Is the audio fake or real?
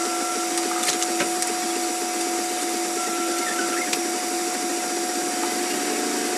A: real